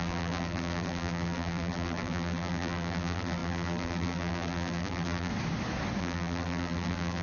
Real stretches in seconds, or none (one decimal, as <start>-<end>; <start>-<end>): 5.3-6.0